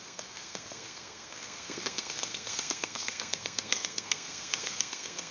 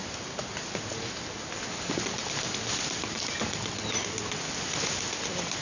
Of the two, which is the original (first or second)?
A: second